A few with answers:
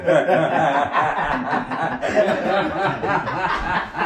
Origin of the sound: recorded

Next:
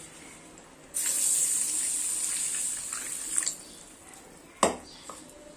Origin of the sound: recorded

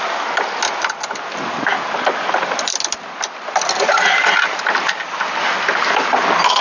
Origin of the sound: recorded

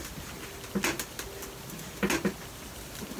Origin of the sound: recorded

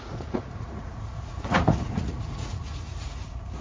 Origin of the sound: remade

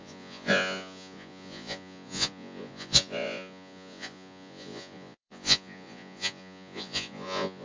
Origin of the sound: remade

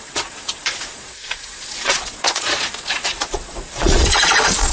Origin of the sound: remade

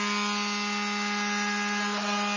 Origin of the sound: recorded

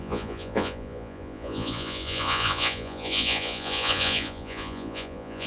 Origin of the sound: remade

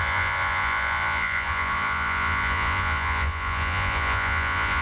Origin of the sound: remade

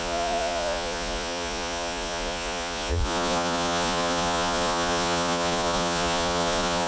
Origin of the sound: remade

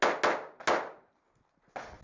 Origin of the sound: recorded